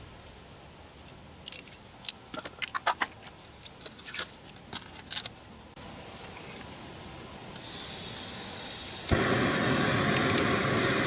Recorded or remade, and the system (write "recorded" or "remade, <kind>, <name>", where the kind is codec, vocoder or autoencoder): recorded